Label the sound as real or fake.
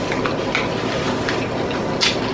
real